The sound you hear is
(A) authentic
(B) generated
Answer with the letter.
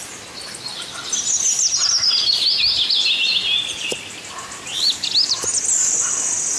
A